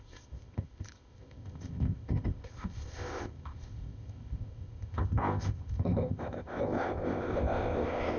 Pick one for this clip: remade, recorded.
remade